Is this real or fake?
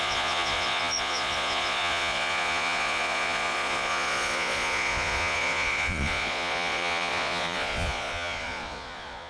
fake